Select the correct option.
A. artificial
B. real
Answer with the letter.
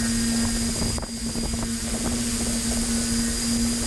B